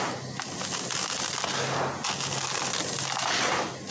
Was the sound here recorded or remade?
recorded